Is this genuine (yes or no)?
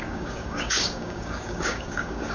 no